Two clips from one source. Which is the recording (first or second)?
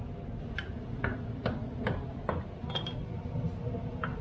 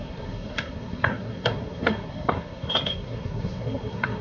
first